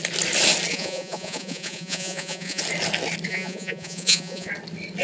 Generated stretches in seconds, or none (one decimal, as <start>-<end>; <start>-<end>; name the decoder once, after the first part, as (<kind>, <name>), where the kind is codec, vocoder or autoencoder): 0.7-2.6 (vocoder, Vocos); 3.3-4.5

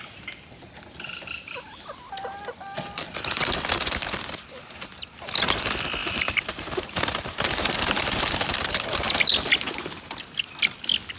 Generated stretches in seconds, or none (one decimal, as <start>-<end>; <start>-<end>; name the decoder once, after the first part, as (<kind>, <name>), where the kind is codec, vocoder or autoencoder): 6.0-8.2 (vocoder, BigVGAN v2)